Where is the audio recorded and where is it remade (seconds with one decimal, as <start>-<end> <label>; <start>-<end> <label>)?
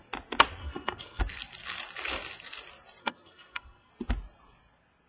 0.0-0.6 recorded; 0.6-1.2 remade; 1.2-3.0 recorded; 3.0-3.9 remade; 3.9-5.1 recorded